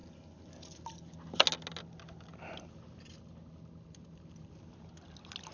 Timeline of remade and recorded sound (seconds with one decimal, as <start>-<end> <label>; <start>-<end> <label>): 0.0-5.5 recorded